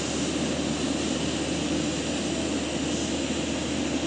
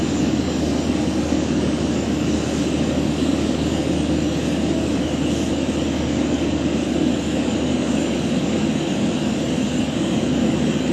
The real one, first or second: first